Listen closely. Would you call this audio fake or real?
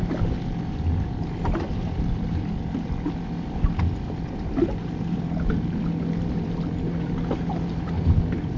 real